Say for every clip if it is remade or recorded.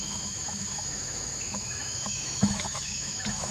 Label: remade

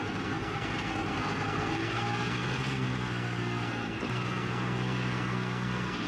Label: remade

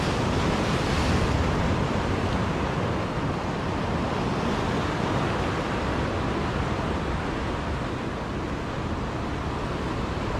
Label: recorded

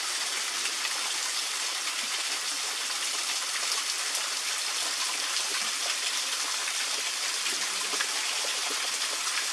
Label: recorded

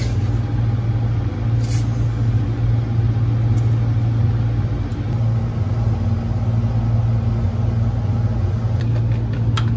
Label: recorded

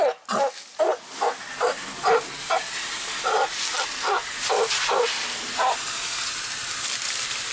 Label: recorded